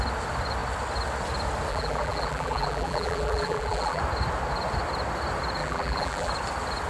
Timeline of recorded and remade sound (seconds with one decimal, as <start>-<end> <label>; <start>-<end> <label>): 0.0-1.7 recorded; 1.7-4.0 remade; 4.0-5.6 recorded; 5.6-6.3 remade; 6.3-6.9 recorded